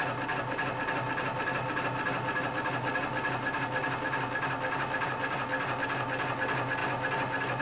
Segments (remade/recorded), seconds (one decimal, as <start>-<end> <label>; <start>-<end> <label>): 0.0-7.6 recorded